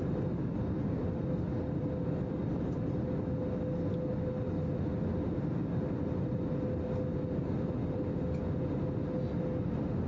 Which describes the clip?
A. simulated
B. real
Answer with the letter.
B